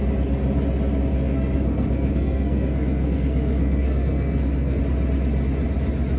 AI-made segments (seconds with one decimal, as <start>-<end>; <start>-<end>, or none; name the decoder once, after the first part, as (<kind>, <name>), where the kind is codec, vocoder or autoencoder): 1.1-4.8 (codec, SNAC)